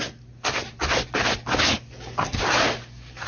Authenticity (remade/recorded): recorded